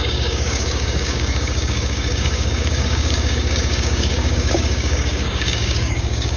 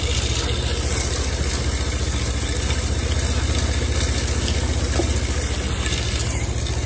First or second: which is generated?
first